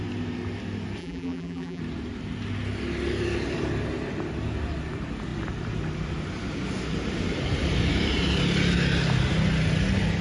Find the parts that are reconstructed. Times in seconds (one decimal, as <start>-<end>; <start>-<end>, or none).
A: 1.0-1.8